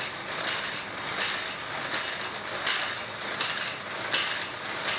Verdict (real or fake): real